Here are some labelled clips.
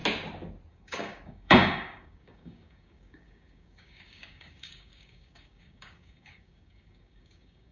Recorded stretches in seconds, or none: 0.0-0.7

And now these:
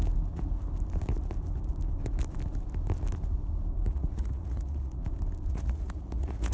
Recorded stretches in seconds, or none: 0.0-3.9; 5.0-5.5

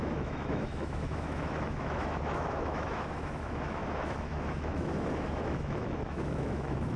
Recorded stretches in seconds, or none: none

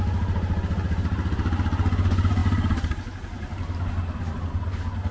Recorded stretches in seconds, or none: 0.0-5.1

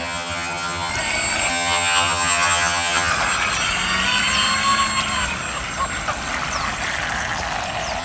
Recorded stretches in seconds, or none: 0.9-1.5; 3.1-8.0

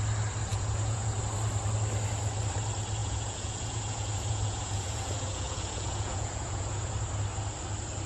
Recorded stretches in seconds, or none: 0.0-0.5; 1.2-3.0; 6.9-8.1

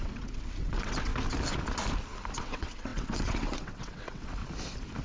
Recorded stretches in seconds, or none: 1.1-2.4; 4.4-5.0

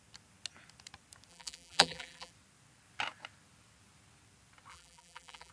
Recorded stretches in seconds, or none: 0.0-1.3; 2.3-4.7